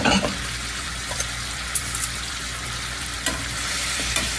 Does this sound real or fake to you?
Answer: fake